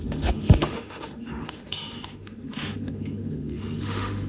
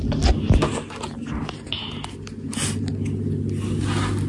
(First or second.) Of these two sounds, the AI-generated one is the first